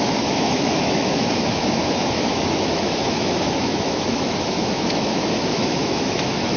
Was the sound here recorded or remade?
remade